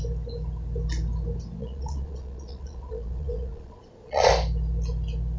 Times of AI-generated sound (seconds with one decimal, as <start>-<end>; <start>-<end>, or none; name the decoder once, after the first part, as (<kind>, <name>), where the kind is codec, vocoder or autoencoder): 1.6-4.3 (vocoder, Vocos)